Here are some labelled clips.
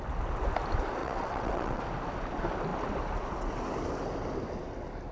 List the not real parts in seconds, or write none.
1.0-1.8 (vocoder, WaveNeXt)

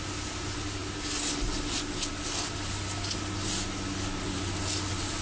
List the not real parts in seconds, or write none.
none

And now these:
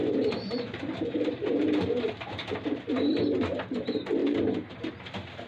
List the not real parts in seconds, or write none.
0.0-3.2 (vocoder, BigVGAN v2); 4.2-4.9